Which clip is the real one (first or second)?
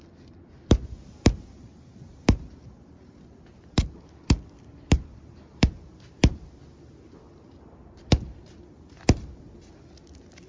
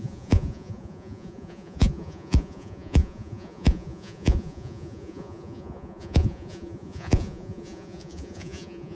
first